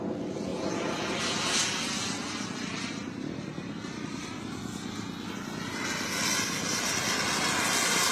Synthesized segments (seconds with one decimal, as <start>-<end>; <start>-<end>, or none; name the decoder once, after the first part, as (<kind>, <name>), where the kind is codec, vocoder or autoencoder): none